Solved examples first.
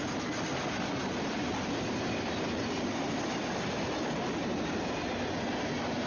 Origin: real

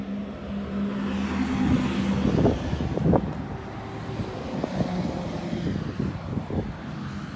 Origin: real